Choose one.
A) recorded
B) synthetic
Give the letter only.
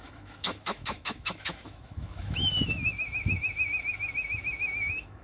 B